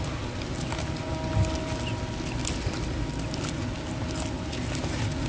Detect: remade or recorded recorded